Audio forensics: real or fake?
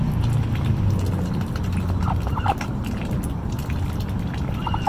real